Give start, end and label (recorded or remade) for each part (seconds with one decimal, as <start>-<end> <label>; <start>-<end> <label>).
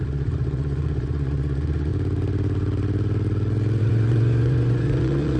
0.0-1.9 remade; 1.9-3.8 recorded; 3.8-5.4 remade